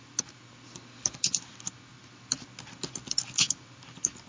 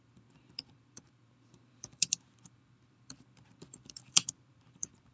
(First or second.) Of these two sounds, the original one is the first